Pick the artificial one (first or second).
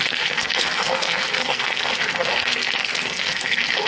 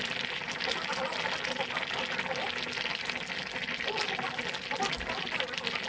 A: first